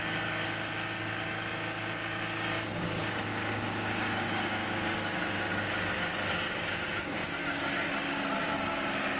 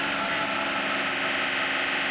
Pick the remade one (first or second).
first